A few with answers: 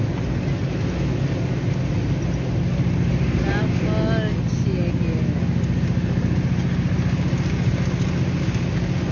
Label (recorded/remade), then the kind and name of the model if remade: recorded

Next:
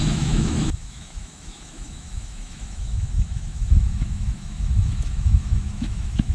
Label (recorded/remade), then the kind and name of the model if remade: remade, autoencoder, DAC-VAE